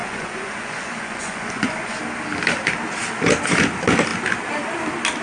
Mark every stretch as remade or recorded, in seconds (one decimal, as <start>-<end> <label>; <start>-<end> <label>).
0.0-2.0 remade; 2.0-5.2 recorded